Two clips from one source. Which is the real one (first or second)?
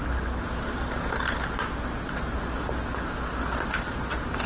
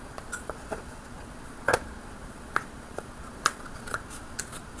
first